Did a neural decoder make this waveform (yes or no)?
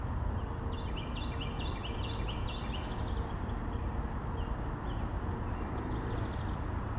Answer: no